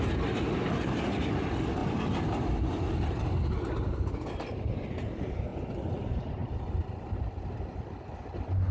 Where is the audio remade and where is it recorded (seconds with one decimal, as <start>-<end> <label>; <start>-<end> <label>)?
0.0-8.7 recorded